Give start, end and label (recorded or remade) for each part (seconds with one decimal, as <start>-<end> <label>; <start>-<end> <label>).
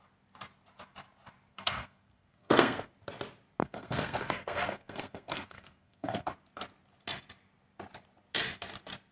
0.0-1.5 recorded; 1.5-2.9 remade; 2.9-3.6 recorded; 3.6-6.3 remade; 6.3-9.1 recorded